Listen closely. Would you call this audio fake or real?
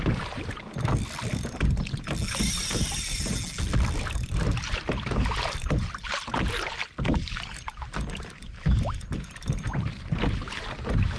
real